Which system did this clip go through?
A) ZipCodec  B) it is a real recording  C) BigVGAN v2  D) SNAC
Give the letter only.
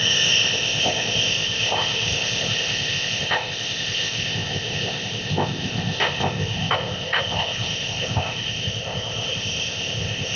A